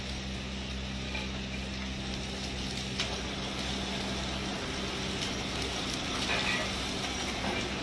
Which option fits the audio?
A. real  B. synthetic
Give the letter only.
A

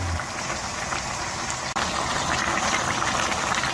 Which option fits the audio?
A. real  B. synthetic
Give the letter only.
A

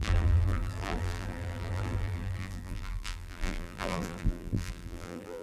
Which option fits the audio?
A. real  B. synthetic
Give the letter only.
B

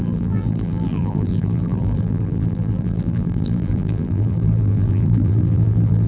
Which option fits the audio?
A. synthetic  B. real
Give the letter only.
A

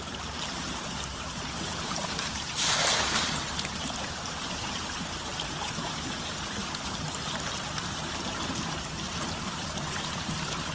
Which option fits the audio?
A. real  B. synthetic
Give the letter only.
B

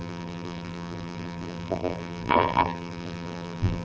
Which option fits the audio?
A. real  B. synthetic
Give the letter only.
B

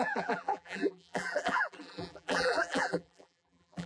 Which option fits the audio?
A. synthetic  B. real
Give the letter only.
A